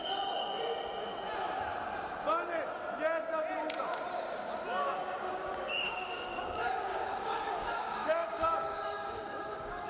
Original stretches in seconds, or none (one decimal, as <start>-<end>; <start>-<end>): 0.0-4.7